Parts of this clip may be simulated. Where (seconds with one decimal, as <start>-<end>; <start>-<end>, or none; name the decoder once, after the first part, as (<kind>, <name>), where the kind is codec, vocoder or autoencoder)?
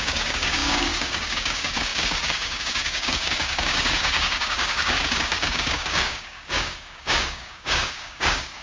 0.0-8.6 (codec, DAC)